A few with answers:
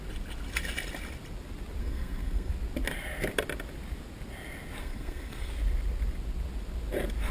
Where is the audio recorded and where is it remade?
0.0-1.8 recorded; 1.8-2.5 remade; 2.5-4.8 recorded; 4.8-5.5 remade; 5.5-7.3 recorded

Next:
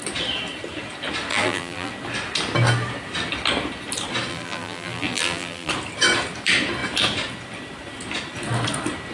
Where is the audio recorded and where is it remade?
0.0-1.3 recorded; 1.3-1.9 remade; 1.9-4.3 recorded; 4.3-5.7 remade; 5.7-9.1 recorded

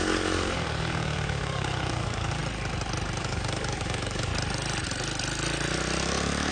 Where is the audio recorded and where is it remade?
0.0-2.4 remade; 2.4-3.2 recorded; 3.2-4.3 remade; 4.3-6.0 recorded; 6.0-6.5 remade

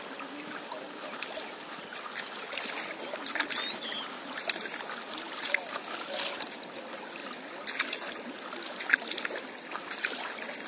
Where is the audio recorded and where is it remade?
0.0-10.7 recorded